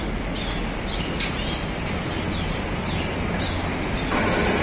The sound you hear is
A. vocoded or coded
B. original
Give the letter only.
B